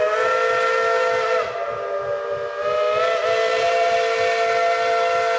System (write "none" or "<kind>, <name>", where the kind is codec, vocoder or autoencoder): none